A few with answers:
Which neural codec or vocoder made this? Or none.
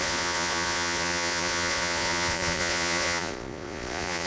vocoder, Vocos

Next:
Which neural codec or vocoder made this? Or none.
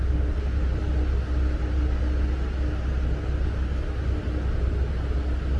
none